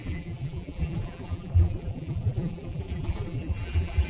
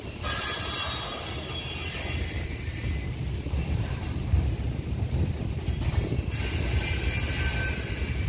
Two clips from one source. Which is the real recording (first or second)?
second